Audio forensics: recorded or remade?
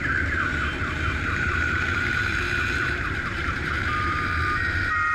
remade